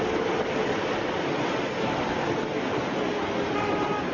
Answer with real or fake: fake